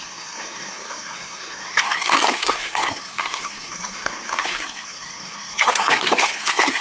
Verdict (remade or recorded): remade